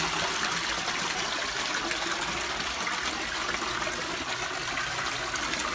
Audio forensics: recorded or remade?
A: recorded